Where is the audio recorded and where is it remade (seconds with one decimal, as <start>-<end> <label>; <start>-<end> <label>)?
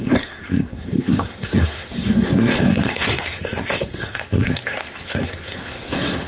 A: 0.0-6.3 remade